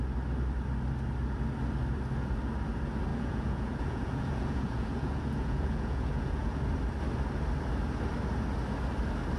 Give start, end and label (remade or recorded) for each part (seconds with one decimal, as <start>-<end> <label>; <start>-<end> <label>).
0.0-3.1 recorded; 3.1-6.6 remade; 6.6-9.4 recorded